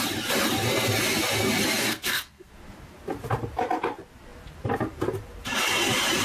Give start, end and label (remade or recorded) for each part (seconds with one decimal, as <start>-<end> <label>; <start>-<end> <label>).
0.0-1.8 recorded; 1.8-2.5 remade; 2.5-6.2 recorded